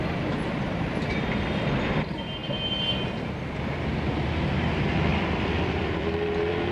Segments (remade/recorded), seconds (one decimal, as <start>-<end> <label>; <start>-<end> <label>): 0.0-5.1 recorded; 5.1-6.7 remade